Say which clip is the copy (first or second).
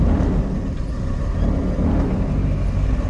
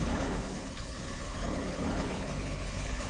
second